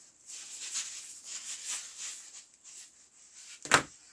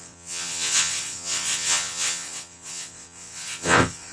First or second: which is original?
first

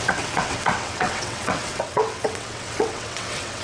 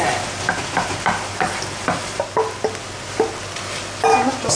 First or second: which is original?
second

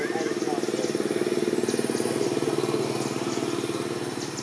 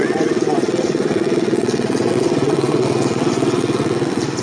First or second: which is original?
first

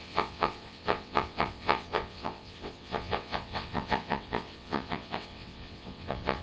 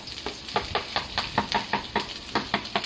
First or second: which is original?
second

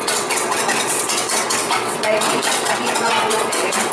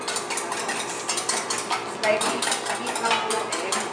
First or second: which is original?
second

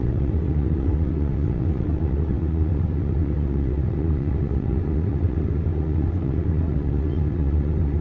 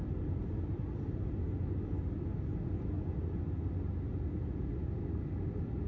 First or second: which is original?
second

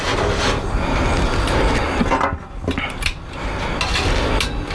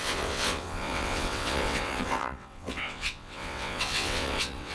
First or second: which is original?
first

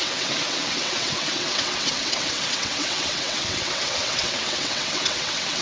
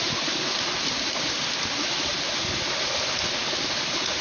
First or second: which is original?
second